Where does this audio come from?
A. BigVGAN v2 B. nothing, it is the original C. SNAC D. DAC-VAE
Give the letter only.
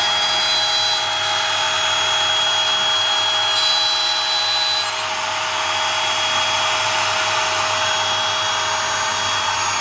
B